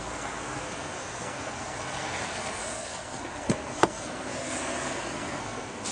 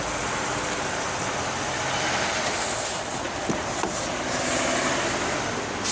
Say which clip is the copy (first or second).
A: first